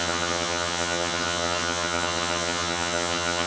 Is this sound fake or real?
fake